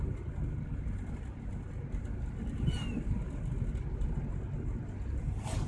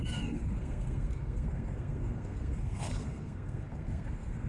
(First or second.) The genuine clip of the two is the first